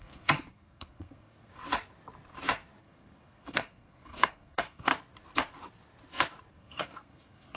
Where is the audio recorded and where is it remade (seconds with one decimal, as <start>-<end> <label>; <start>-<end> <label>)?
0.0-1.5 remade; 1.5-2.8 recorded; 2.8-4.9 remade; 4.9-6.5 recorded; 6.5-7.6 remade

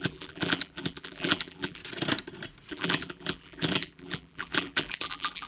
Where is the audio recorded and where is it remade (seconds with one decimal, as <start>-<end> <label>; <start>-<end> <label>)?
0.0-1.8 remade; 1.8-2.7 recorded; 2.7-5.5 remade

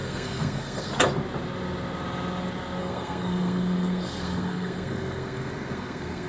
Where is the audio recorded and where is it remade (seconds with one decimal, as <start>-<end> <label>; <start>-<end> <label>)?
0.0-0.9 remade; 0.9-2.8 recorded; 2.8-6.3 remade

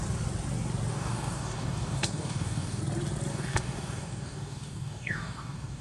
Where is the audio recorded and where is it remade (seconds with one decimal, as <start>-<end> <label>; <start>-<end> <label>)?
0.0-0.9 recorded; 0.9-2.8 remade; 2.8-3.3 recorded; 3.3-5.8 remade